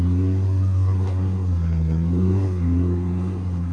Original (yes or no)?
no